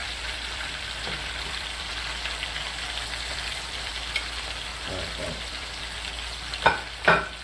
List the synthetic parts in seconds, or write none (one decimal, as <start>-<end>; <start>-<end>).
0.0-1.9; 3.3-3.9; 4.7-5.8